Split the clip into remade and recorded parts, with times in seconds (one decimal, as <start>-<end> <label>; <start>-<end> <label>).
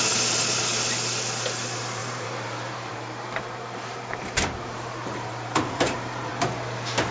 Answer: 0.0-2.0 recorded; 2.0-6.3 remade; 6.3-7.1 recorded